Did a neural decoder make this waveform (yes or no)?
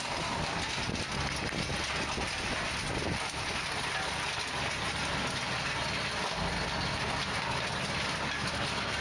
no